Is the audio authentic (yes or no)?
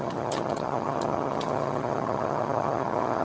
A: no